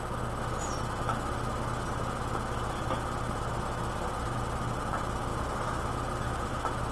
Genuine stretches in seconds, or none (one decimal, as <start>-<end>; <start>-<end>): 0.0-6.9